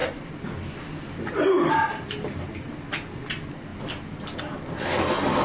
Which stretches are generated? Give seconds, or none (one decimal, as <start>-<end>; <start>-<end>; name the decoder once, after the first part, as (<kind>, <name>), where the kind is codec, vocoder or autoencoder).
none